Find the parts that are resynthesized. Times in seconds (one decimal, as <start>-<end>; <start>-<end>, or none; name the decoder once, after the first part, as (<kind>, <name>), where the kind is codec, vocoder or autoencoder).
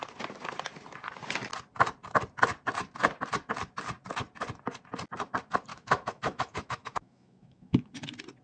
5.7-7.9 (autoencoder, DAC-VAE)